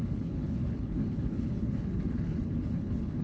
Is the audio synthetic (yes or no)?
yes